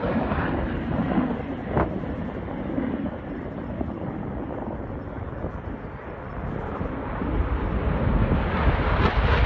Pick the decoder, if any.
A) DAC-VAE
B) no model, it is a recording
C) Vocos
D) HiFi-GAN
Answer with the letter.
B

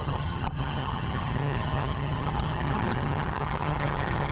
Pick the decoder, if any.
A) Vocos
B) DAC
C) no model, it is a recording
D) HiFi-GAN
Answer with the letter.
D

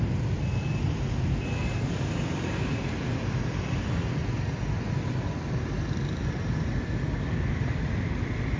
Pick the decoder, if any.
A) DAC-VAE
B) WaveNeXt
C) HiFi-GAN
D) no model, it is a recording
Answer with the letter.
D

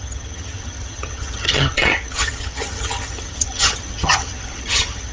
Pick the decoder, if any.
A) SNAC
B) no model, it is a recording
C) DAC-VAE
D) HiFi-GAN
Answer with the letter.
D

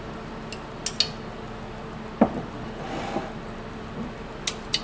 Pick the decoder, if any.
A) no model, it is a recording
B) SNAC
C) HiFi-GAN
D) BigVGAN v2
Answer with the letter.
A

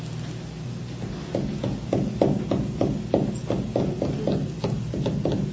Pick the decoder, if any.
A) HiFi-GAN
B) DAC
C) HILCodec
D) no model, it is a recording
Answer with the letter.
D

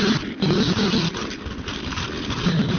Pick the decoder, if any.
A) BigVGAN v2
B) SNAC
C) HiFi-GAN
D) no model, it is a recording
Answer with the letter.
D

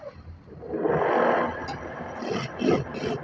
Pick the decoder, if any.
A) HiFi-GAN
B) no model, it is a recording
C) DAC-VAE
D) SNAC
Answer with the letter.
B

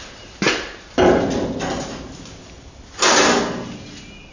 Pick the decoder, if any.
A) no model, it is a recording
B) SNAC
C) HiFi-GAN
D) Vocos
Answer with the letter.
A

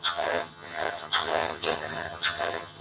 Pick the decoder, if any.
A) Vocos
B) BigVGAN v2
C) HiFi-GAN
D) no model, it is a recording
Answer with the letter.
C